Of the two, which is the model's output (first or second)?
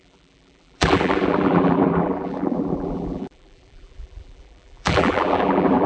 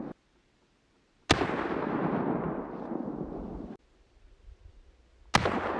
first